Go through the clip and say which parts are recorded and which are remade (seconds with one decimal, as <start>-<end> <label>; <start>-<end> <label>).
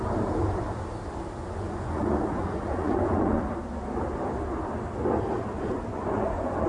0.0-1.4 recorded; 1.4-3.4 remade; 3.4-5.9 recorded; 5.9-6.7 remade